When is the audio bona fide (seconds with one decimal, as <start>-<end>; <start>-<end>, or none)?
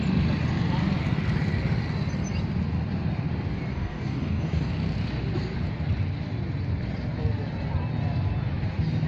0.0-3.7; 4.7-9.1